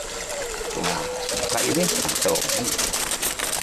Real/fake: fake